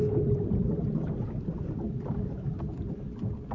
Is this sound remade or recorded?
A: recorded